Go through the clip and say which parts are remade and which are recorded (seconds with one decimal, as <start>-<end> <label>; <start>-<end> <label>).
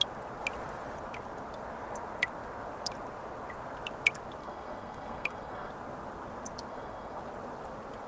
0.0-4.4 recorded; 4.4-5.7 remade; 5.7-6.7 recorded; 6.7-7.2 remade; 7.2-8.1 recorded